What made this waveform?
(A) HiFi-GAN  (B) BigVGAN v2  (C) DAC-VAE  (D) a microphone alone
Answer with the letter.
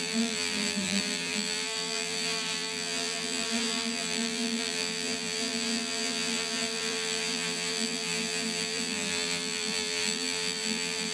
B